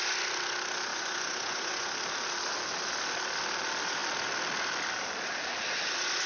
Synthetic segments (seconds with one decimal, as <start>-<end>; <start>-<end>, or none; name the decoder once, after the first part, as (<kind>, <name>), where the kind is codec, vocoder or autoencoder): 0.9-1.9 (vocoder, Vocos)